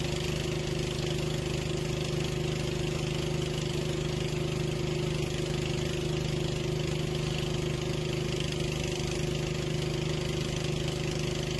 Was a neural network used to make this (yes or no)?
no